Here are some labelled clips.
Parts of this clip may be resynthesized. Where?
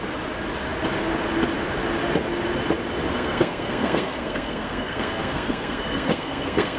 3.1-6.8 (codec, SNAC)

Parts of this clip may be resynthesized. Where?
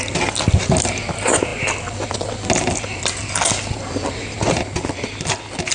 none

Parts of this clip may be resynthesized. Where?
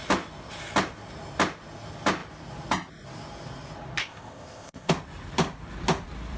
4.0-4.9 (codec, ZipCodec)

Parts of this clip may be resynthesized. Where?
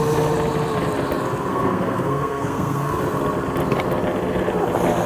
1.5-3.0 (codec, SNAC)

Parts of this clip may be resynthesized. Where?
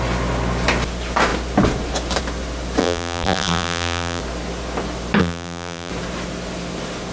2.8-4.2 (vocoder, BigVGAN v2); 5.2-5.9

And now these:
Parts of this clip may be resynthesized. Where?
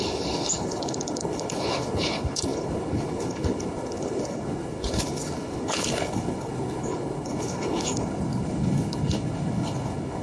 0.0-10.2 (codec, HILCodec)